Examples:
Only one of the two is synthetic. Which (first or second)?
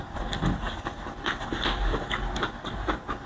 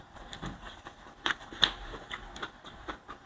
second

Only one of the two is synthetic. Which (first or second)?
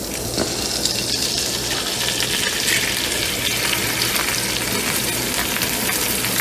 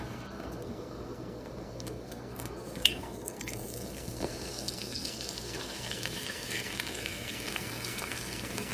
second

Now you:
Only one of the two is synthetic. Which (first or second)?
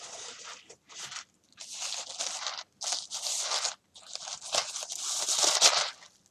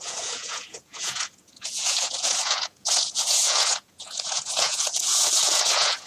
second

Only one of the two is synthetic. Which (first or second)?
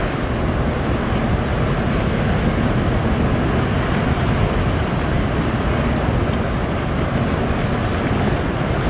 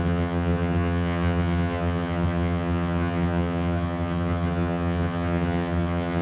second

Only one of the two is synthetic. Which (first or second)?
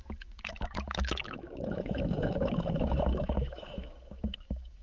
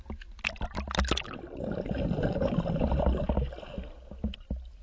first